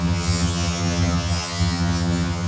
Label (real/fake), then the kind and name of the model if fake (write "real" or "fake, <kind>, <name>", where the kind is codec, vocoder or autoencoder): fake, vocoder, HiFi-GAN